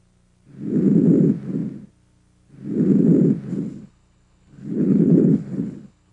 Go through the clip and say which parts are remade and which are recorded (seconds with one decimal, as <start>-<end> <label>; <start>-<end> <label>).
0.0-3.5 recorded; 3.5-6.1 remade